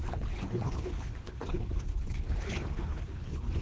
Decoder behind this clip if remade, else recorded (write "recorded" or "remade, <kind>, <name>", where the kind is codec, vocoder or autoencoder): remade, codec, HILCodec